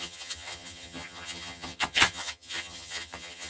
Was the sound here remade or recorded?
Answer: remade